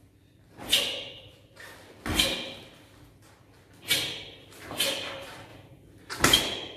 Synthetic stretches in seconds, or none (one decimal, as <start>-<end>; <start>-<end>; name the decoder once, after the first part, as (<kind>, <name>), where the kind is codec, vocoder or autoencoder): none